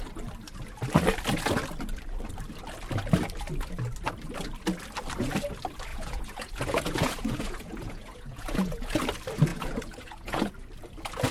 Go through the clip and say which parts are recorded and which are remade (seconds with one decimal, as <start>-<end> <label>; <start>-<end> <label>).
0.0-5.9 recorded; 5.9-9.0 remade; 9.0-9.5 recorded; 9.5-10.5 remade; 10.5-11.3 recorded